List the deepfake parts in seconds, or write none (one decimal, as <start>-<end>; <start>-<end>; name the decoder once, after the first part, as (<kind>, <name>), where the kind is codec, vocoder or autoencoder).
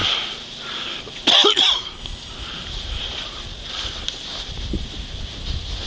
0.0-3.5 (vocoder, BigVGAN v2)